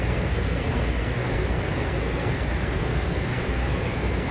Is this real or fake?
fake